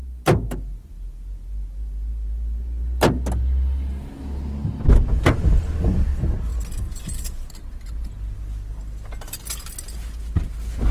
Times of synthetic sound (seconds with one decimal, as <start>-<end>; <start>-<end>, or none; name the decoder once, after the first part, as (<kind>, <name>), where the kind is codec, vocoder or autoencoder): none